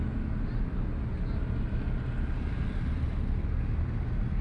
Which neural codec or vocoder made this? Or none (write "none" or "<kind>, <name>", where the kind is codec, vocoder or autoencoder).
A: none